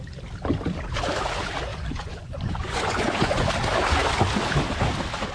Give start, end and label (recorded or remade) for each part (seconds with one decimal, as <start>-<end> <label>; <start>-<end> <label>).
0.0-1.7 recorded; 1.7-3.5 remade; 3.5-5.3 recorded